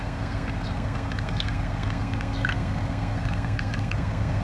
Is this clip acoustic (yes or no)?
no